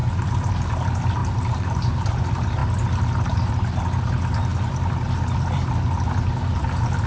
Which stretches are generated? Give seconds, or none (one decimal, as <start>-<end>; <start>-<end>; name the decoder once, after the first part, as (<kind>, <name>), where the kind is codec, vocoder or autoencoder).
0.0-0.5 (vocoder, BigVGAN v2); 1.2-2.2